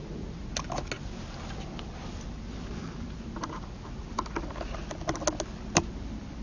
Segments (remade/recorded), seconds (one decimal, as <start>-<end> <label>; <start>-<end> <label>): 0.0-6.4 recorded